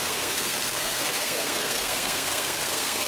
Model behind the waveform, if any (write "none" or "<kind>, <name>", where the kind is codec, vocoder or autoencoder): codec, SNAC